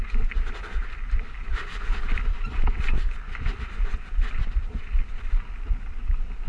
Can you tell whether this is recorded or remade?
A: recorded